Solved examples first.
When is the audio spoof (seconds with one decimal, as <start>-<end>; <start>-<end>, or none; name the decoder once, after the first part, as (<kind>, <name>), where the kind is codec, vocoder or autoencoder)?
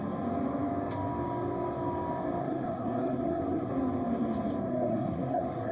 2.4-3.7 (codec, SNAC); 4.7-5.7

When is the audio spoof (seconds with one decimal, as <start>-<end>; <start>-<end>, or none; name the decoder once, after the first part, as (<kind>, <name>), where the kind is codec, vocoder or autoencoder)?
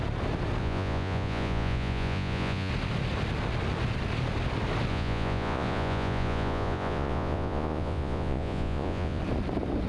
0.6-2.7 (vocoder, Vocos); 4.9-9.2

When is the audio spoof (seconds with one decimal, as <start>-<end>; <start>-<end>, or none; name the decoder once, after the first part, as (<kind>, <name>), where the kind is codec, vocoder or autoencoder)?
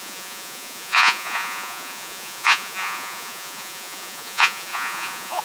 0.0-5.4 (vocoder, Vocos)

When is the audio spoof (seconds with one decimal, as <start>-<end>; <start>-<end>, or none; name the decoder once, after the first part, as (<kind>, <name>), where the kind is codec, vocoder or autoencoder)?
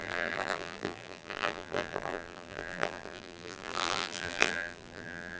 0.0-5.4 (vocoder, BigVGAN v2)